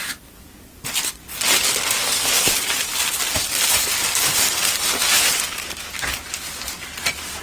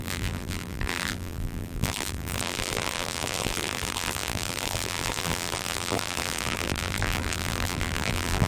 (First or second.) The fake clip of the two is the second